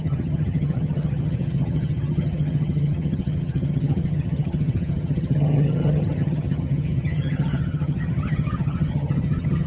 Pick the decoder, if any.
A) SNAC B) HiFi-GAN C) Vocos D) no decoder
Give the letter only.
B